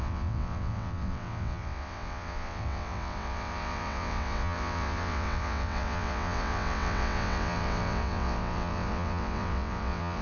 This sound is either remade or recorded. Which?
remade